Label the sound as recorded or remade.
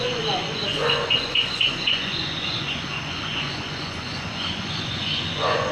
remade